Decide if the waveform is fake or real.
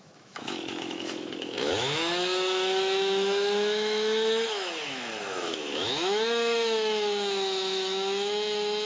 fake